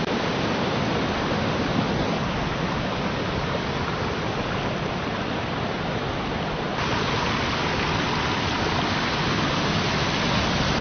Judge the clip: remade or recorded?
recorded